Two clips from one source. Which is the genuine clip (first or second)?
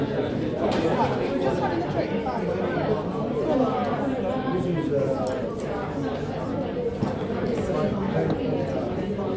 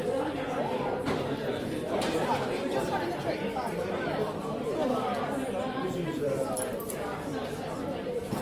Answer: first